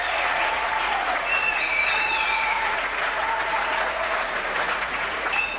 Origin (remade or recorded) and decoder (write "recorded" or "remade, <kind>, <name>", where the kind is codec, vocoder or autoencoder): remade, vocoder, Vocos